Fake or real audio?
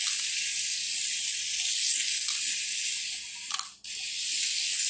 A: real